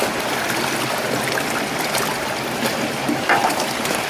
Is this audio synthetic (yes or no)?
no